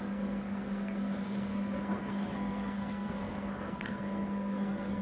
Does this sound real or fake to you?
fake